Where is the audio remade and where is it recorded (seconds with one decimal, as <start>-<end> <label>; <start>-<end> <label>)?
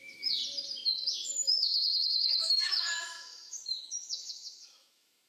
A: 0.0-0.4 remade; 0.4-1.1 recorded; 1.1-5.3 remade